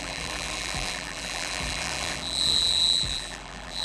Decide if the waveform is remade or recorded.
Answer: remade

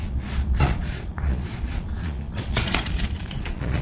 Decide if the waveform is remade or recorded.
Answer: remade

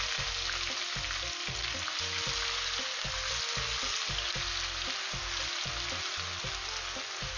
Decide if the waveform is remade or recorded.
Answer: recorded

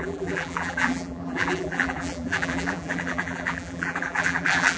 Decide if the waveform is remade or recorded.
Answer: remade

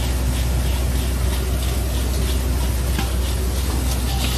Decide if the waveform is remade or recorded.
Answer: recorded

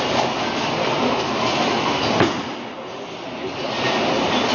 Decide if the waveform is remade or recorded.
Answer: recorded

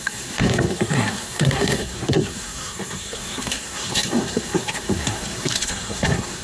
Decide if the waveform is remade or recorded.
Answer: remade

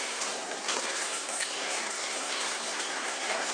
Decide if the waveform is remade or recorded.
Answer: remade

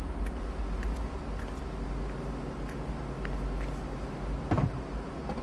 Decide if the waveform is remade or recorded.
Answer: recorded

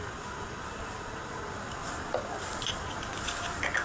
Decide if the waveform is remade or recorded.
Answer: recorded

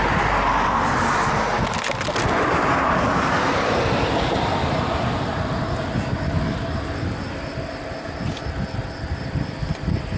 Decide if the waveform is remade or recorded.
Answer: recorded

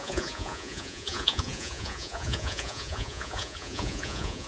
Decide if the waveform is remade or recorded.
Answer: remade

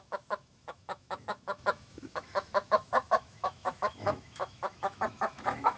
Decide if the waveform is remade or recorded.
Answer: remade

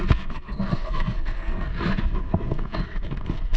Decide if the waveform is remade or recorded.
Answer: remade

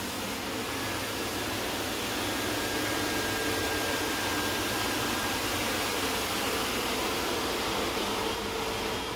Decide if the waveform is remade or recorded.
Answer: recorded